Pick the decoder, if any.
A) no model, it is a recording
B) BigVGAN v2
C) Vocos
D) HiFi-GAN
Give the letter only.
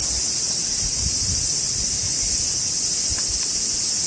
A